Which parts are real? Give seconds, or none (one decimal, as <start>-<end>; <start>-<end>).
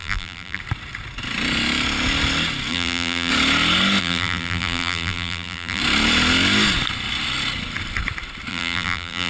0.6-2.7; 3.3-4.0; 5.8-8.5